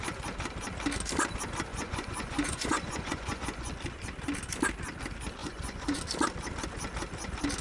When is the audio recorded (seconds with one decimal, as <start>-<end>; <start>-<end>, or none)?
0.0-1.7; 3.7-5.4; 6.0-7.6